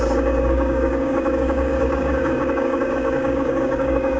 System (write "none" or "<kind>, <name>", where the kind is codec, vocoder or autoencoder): codec, DAC